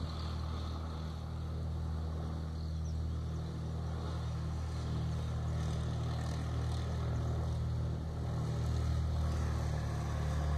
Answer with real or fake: real